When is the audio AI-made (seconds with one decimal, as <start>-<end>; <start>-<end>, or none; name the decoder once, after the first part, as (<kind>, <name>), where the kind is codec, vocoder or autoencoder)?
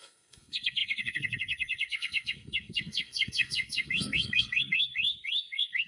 0.0-5.9 (codec, SNAC)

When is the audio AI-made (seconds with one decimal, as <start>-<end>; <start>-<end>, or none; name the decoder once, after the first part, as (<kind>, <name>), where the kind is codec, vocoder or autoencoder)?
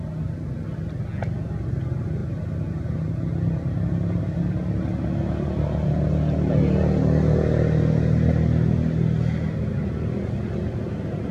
none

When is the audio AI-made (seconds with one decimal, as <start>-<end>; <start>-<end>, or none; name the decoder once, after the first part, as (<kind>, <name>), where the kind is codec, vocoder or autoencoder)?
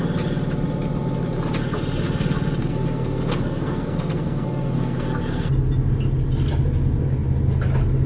2.6-5.5 (codec, SNAC)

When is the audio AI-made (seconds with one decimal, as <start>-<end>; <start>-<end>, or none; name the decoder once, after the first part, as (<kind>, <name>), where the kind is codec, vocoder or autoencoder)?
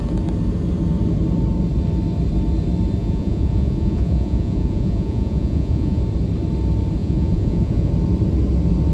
3.0-6.0 (vocoder, Vocos); 7.0-7.9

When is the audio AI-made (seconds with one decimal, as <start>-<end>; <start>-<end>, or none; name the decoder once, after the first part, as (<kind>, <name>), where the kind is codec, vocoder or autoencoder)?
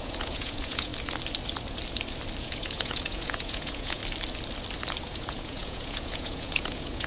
0.0-0.9 (vocoder, Vocos); 2.4-4.0; 5.0-7.1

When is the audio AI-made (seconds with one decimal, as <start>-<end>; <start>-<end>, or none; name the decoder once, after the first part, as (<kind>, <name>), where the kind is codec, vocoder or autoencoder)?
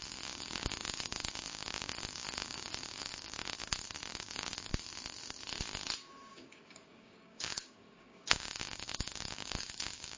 0.0-3.4 (codec, DAC); 4.1-4.7; 6.3-10.2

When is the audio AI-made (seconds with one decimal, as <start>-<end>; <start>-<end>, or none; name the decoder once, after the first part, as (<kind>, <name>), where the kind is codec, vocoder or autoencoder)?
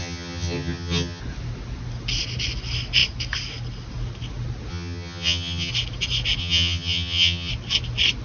0.0-1.2 (vocoder, HiFi-GAN); 4.7-5.7; 6.4-7.5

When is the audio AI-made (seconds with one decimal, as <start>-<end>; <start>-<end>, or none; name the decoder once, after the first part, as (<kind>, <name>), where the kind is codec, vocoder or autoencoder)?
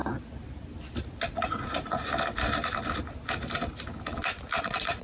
1.3-2.1 (vocoder, Vocos); 4.6-5.0